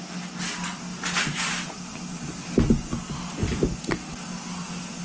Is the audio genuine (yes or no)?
yes